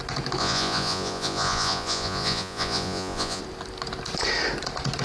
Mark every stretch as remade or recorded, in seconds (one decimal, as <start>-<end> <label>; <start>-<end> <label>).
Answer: 0.0-0.4 recorded; 0.4-3.4 remade; 3.4-5.0 recorded